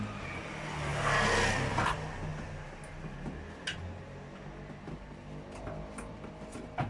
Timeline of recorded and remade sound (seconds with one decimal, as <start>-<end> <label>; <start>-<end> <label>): 0.0-6.9 recorded